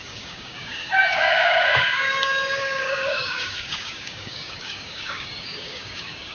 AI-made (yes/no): yes